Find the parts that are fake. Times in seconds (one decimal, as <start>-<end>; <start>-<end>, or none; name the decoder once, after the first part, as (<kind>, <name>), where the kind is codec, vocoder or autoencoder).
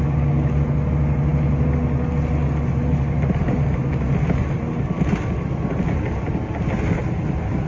none